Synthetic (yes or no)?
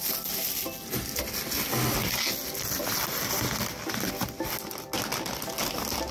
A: no